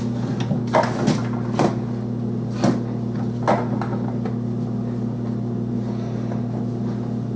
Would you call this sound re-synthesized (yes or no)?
no